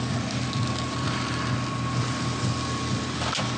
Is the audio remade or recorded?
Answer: recorded